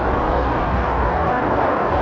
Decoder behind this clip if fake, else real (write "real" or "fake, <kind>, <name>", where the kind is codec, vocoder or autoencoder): fake, codec, DAC